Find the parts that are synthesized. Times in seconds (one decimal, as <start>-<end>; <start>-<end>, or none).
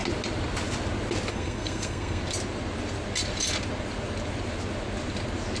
1.3-2.2